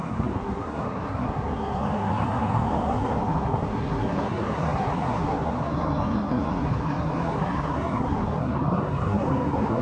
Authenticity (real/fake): fake